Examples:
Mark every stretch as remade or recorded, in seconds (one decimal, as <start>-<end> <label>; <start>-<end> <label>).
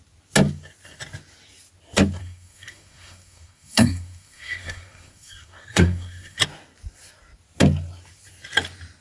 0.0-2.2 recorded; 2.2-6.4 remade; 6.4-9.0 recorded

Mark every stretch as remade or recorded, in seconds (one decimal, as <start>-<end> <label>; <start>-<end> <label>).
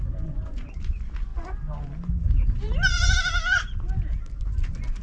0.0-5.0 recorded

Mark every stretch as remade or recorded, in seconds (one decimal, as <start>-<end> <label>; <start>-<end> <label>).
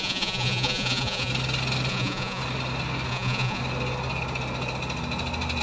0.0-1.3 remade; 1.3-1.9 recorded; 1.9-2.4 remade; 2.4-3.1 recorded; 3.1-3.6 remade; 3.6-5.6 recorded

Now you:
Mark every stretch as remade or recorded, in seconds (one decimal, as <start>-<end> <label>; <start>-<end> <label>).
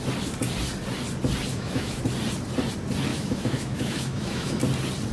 0.0-1.5 recorded; 1.5-2.0 remade; 2.0-3.1 recorded; 3.1-4.6 remade; 4.6-5.1 recorded